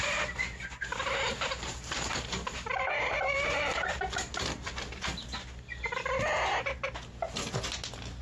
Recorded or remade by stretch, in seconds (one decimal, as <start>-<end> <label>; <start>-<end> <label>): 0.0-0.9 recorded; 0.9-4.3 remade; 4.3-8.2 recorded